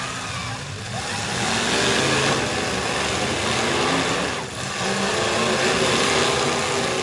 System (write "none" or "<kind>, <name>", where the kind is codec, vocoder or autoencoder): none